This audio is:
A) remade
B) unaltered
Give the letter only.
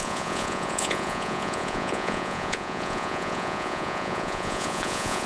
A